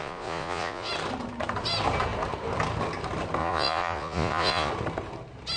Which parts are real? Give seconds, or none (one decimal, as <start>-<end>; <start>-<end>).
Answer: 0.9-3.4; 4.7-5.6